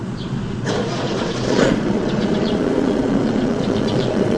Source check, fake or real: fake